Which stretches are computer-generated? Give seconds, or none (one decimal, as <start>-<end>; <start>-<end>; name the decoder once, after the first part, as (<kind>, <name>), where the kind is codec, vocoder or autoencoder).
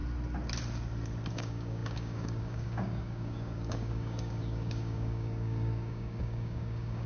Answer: 1.3-7.1 (codec, DAC)